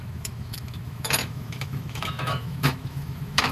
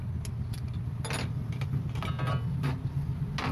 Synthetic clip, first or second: first